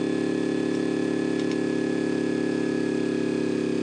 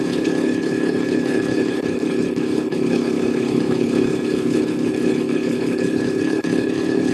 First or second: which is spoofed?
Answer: second